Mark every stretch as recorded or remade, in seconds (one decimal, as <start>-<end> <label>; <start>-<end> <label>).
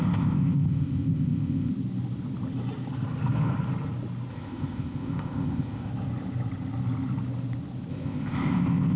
0.0-1.7 remade; 1.7-4.3 recorded; 4.3-5.9 remade; 5.9-7.9 recorded; 7.9-9.0 remade